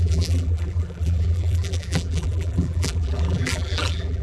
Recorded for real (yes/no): no